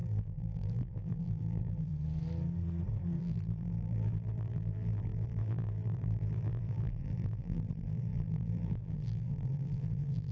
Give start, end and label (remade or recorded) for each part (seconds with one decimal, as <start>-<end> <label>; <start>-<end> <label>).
0.0-1.9 remade; 1.9-3.2 recorded; 3.2-10.3 remade